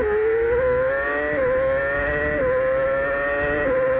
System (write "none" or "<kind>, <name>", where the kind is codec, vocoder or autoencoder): none